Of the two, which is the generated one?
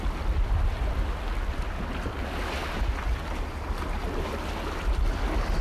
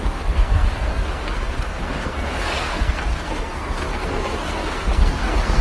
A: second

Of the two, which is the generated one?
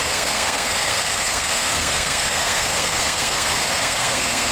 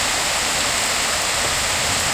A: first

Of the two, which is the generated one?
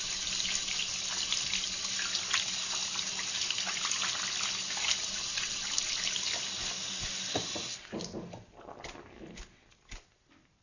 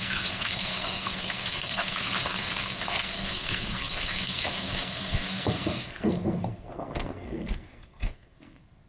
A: second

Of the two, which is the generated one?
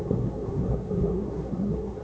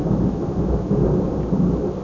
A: first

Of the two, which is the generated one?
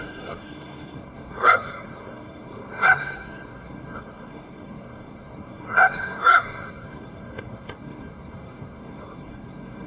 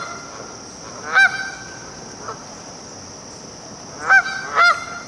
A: first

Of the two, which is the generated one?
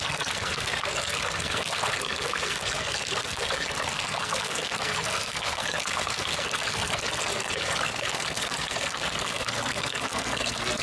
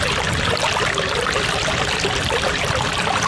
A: first